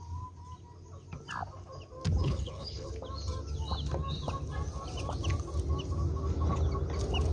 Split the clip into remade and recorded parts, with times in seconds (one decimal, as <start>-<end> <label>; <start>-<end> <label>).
0.0-2.2 recorded; 2.2-2.9 remade; 2.9-7.3 recorded